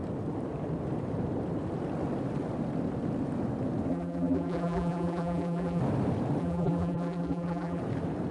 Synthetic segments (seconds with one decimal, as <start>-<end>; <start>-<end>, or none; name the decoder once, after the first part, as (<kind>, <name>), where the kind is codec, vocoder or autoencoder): 3.9-5.8 (vocoder, BigVGAN v2); 6.4-7.8